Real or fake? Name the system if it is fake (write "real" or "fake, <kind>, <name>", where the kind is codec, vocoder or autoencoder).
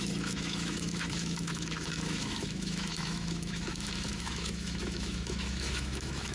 fake, autoencoder, DAC-VAE